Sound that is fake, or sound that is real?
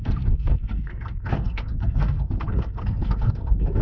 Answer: fake